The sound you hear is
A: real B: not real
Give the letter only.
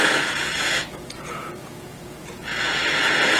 B